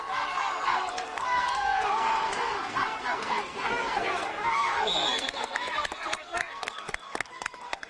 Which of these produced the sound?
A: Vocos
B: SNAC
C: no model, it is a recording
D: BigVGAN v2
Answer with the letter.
B